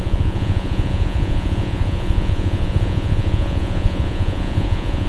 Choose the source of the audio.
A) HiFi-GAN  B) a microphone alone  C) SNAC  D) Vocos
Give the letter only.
D